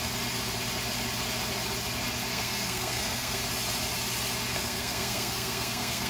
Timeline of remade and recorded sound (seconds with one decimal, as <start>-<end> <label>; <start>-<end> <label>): 0.0-2.3 recorded; 2.3-3.4 remade; 3.4-4.5 recorded; 4.5-6.1 remade